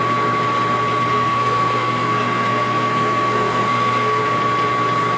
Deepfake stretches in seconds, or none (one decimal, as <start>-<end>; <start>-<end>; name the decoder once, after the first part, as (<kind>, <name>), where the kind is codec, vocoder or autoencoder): 1.1-4.2 (codec, SNAC)